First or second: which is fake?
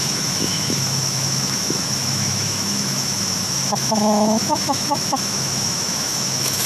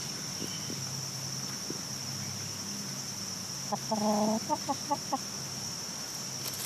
first